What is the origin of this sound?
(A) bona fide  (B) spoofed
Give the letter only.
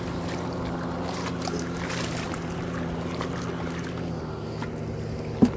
A